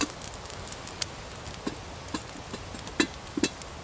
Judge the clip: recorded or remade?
recorded